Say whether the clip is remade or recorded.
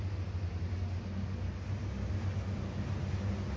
recorded